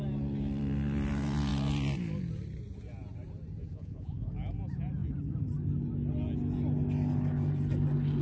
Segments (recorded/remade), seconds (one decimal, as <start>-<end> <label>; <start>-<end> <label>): 0.0-3.7 recorded; 3.7-4.3 remade; 4.3-8.2 recorded